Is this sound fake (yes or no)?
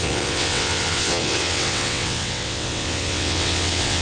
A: yes